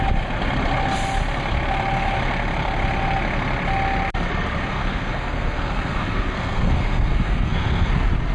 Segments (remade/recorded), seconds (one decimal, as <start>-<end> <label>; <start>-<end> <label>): 0.0-4.7 recorded; 4.7-7.9 remade; 7.9-8.3 recorded